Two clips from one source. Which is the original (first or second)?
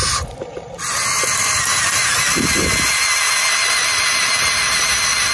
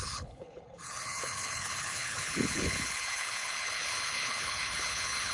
first